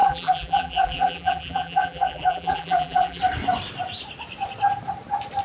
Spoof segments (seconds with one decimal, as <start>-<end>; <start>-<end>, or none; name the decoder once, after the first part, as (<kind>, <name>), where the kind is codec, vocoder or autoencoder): 0.0-3.2 (vocoder, BigVGAN v2)